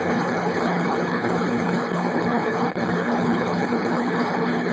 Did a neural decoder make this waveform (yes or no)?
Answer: yes